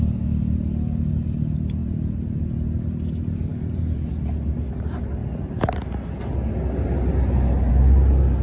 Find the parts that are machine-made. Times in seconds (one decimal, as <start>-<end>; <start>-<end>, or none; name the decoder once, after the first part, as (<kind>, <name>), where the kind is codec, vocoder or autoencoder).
none